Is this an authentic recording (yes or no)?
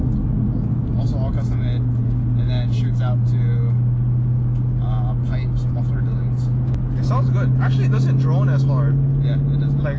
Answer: yes